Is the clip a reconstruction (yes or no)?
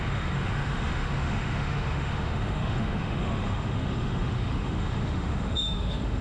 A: yes